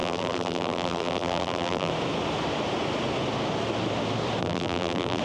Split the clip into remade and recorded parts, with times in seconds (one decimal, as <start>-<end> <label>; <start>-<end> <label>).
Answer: 0.0-1.9 remade; 1.9-4.4 recorded; 4.4-5.2 remade